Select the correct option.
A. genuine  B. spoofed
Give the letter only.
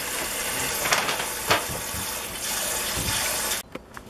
A